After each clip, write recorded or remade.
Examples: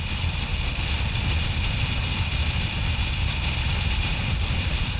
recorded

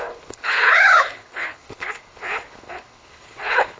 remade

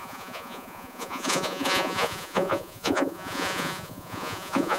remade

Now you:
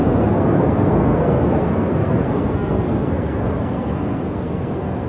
remade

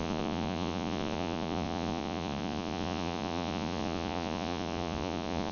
remade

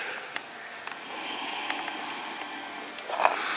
recorded